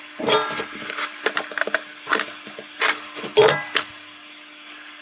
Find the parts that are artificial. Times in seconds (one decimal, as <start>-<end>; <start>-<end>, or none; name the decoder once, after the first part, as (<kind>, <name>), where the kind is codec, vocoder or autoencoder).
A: none